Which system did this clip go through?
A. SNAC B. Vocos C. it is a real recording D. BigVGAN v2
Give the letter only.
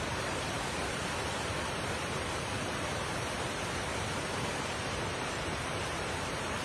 D